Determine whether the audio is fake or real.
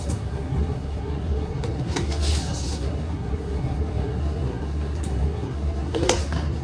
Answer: fake